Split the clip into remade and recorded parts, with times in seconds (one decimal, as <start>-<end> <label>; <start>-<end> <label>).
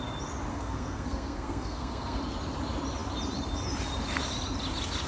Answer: 0.0-0.5 recorded; 0.5-2.2 remade; 2.2-5.1 recorded